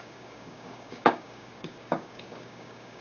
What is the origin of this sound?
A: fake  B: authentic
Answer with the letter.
A